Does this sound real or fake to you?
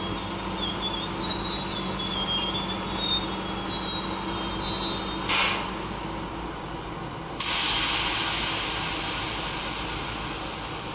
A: real